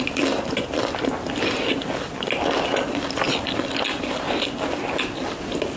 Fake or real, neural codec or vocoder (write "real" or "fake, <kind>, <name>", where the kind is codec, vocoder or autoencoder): real